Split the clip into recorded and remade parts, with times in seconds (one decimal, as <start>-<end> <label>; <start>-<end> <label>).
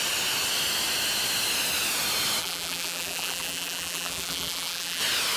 0.0-2.4 recorded; 2.4-5.0 remade; 5.0-5.4 recorded